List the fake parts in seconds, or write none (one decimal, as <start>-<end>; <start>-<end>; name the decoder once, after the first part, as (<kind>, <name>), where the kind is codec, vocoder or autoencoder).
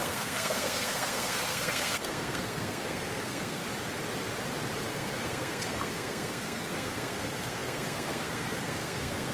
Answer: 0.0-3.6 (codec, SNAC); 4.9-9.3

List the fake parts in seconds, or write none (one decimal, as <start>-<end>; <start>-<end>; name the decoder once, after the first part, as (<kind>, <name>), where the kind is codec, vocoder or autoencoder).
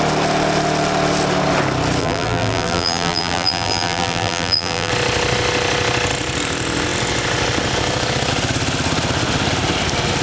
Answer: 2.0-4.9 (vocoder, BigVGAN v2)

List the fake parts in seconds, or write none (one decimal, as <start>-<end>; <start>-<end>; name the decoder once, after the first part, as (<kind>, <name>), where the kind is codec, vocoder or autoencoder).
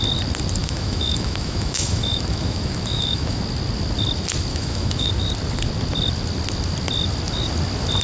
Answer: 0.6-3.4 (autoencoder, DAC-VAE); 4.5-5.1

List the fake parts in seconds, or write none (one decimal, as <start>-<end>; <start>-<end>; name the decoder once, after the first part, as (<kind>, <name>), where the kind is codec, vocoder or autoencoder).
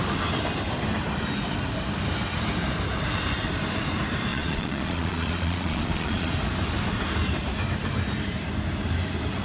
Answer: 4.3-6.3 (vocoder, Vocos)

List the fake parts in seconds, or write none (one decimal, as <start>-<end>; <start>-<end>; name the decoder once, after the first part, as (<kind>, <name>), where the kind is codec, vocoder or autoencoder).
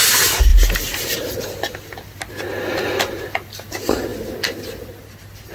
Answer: none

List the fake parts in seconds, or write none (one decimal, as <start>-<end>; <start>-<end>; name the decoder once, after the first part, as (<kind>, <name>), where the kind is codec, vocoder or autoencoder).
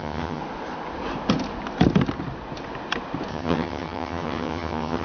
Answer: 0.0-0.4 (vocoder, HiFi-GAN); 3.3-5.0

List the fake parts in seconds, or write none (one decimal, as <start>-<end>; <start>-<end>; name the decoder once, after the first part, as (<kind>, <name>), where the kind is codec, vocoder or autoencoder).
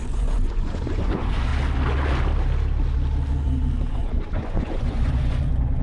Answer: 0.0-1.5 (vocoder, Vocos); 3.9-5.8